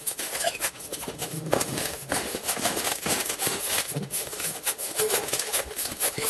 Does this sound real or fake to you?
fake